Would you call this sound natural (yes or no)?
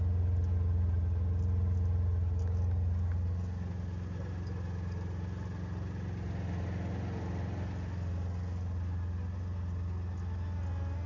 yes